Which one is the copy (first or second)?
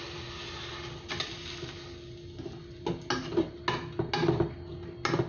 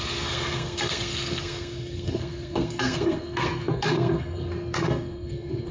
second